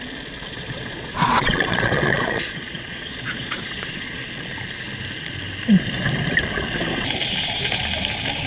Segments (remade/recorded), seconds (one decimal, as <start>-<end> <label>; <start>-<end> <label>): 0.0-0.5 recorded; 0.5-4.3 remade; 4.3-8.5 recorded